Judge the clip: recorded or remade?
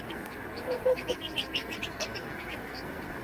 remade